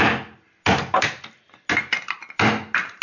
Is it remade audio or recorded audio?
recorded